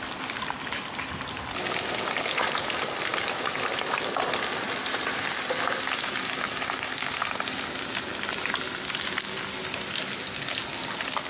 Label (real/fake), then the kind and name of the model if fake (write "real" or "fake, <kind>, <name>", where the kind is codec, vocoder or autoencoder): real